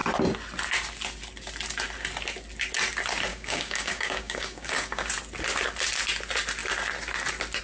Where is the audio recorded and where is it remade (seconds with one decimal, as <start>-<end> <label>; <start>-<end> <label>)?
0.0-3.3 recorded; 3.3-5.1 remade; 5.1-7.6 recorded